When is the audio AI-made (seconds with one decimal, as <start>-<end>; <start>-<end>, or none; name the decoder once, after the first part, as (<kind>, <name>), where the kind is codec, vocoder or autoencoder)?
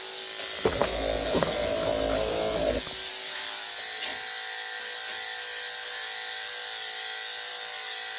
none